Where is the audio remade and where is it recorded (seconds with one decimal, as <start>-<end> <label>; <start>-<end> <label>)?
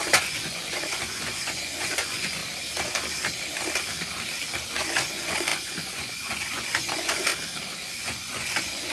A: 0.0-2.4 remade; 2.4-4.7 recorded; 4.7-7.3 remade; 7.3-7.9 recorded; 7.9-8.9 remade